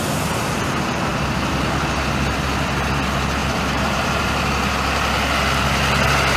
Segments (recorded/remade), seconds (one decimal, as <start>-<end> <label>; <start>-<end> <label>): 0.0-3.4 recorded; 3.4-4.7 remade; 4.7-6.4 recorded